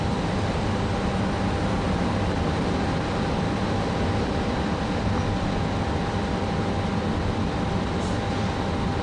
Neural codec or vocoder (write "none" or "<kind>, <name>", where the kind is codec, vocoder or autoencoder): none